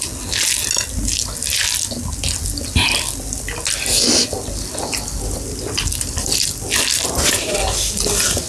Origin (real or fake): real